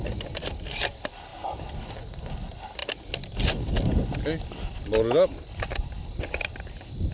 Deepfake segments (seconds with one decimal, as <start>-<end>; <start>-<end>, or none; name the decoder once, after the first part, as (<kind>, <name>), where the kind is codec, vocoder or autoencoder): none